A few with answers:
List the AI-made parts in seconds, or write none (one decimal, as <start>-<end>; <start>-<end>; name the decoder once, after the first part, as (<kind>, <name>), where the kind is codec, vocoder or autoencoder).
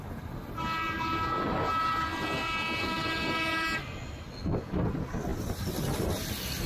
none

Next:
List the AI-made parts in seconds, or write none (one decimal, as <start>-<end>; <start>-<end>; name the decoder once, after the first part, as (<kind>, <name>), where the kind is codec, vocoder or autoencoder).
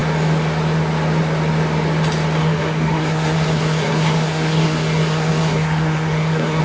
2.4-6.6 (codec, SNAC)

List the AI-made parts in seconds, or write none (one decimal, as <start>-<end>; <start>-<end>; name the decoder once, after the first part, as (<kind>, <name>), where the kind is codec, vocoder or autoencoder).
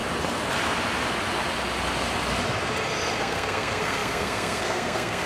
3.2-5.3 (codec, SNAC)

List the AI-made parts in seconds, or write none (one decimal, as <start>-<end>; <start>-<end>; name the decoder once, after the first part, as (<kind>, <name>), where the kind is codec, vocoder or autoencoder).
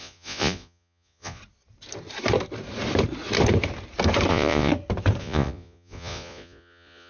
0.0-1.4 (vocoder, Vocos); 4.3-4.7; 5.2-7.1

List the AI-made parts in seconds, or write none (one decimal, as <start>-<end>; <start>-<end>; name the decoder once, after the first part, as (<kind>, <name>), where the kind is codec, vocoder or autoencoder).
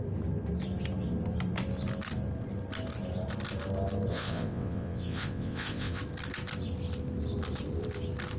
4.1-6.0 (vocoder, WaveNeXt)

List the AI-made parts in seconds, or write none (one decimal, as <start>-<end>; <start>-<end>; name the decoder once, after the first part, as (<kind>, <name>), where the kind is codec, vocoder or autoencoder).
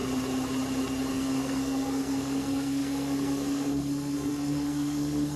1.1-5.4 (codec, SNAC)